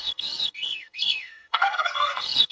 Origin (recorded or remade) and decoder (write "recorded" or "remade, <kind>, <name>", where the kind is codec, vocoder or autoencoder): remade, codec, SNAC